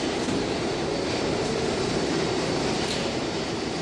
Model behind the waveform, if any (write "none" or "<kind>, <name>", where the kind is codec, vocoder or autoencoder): vocoder, BigVGAN v2